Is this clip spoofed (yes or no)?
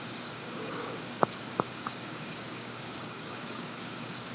yes